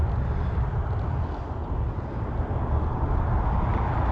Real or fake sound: real